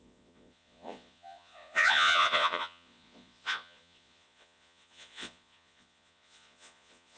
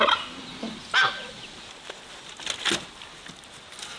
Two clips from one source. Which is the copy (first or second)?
first